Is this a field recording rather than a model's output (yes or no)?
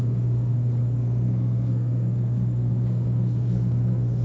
no